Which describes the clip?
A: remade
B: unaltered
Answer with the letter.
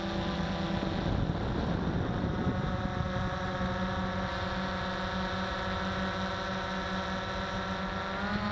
B